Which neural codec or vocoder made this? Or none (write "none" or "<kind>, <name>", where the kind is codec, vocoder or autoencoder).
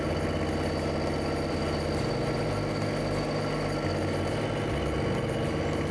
none